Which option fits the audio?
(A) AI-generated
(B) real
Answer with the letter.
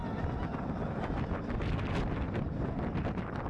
B